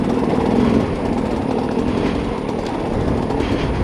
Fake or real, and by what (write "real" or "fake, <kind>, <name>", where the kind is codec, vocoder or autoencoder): real